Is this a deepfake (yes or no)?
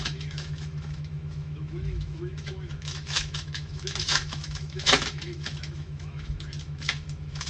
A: yes